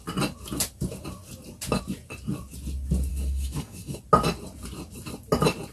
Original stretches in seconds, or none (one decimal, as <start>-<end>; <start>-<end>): 0.0-3.1; 4.0-5.7